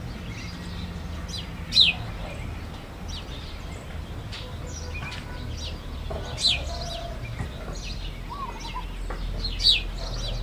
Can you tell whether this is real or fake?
real